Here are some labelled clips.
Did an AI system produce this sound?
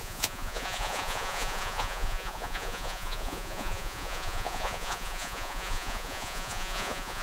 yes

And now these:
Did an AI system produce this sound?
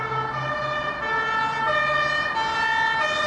no